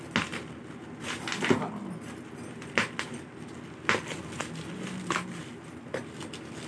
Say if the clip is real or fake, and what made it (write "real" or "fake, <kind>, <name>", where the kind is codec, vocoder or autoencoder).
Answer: real